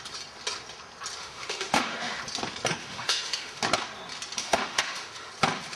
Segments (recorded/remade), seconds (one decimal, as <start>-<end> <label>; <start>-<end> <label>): 0.0-1.2 recorded; 1.2-2.2 remade; 2.2-2.8 recorded; 2.8-3.6 remade; 3.6-4.4 recorded; 4.4-5.3 remade; 5.3-5.8 recorded